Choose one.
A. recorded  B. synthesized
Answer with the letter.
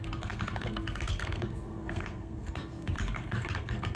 B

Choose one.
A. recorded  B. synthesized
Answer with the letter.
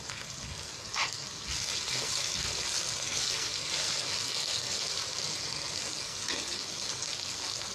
B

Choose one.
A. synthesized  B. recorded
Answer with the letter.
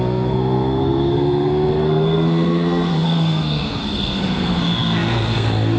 A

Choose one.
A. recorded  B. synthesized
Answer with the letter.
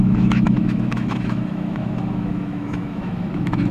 B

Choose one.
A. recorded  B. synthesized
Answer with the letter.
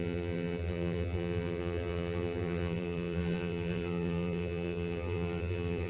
B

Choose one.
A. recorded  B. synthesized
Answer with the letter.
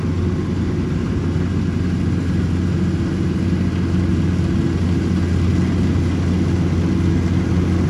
A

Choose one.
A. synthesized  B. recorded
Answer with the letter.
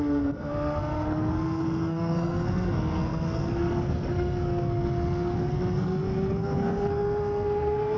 A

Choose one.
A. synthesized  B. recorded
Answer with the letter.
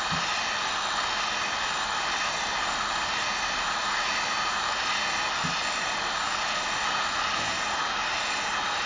B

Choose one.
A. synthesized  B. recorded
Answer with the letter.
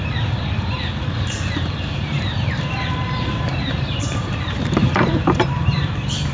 A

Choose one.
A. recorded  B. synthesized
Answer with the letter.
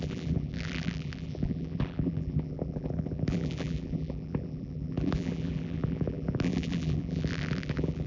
B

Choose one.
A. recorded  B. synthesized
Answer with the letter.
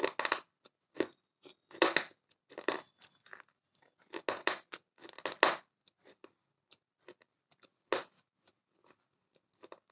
A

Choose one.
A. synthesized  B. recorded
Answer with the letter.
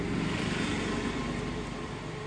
A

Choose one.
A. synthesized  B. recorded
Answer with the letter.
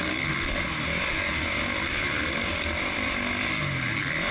B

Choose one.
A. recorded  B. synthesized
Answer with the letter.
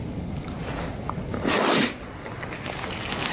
A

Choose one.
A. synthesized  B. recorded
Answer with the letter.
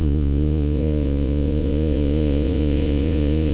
A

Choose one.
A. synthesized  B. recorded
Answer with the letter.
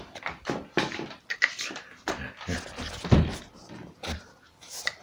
B